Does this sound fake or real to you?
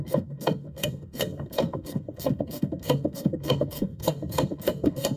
fake